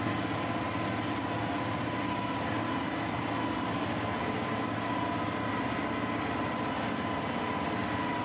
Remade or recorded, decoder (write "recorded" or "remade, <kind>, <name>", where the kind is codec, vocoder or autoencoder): recorded